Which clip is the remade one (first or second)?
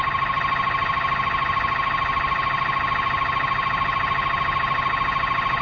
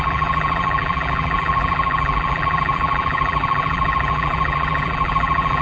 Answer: second